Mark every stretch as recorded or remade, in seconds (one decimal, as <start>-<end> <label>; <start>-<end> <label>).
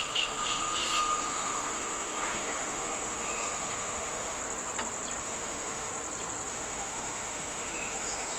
0.0-4.4 remade; 4.4-5.2 recorded; 5.2-5.9 remade; 5.9-6.5 recorded; 6.5-8.4 remade